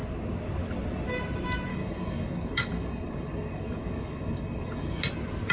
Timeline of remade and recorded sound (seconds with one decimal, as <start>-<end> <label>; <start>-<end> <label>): 0.0-1.7 recorded; 1.7-5.0 remade; 5.0-5.5 recorded

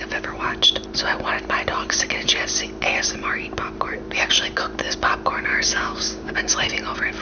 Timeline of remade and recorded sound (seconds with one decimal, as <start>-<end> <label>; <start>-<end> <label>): 0.0-5.5 recorded; 5.5-6.5 remade; 6.5-7.2 recorded

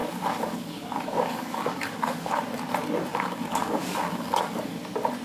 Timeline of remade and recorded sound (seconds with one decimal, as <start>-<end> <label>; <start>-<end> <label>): 0.0-2.4 remade; 2.4-3.1 recorded; 3.1-4.8 remade; 4.8-5.2 recorded

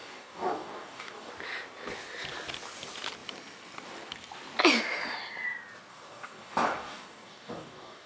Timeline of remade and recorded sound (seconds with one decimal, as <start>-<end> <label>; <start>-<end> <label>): 0.0-1.3 remade; 1.3-5.9 recorded; 5.9-8.1 remade

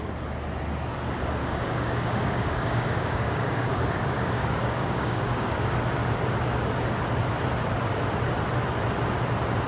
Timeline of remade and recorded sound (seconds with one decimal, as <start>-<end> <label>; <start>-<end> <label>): 0.0-1.4 recorded; 1.4-5.7 remade; 5.7-9.7 recorded

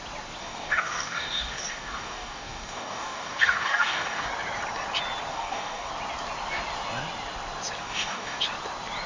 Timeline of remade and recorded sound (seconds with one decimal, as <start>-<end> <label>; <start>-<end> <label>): 0.0-0.4 recorded; 0.4-4.3 remade; 4.3-5.3 recorded; 5.3-5.9 remade; 5.9-7.8 recorded; 7.8-8.4 remade; 8.4-9.1 recorded